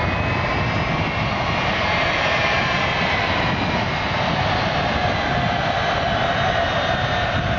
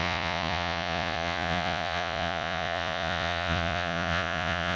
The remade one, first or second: second